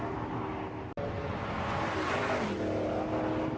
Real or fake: real